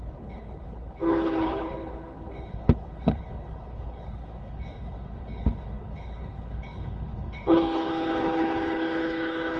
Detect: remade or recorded remade